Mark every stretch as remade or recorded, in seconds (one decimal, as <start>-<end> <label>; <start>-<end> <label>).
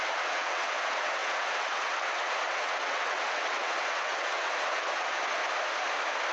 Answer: 0.0-5.4 remade; 5.4-6.3 recorded